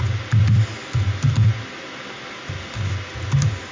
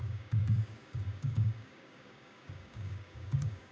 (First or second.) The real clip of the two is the first